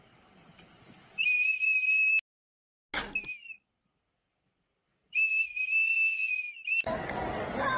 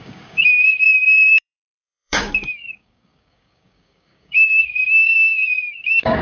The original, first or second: first